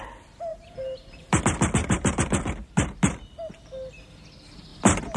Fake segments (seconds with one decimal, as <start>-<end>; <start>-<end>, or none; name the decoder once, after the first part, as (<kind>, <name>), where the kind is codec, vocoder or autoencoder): 0.5-1.4 (vocoder, BigVGAN v2); 1.8-2.3; 4.7-5.2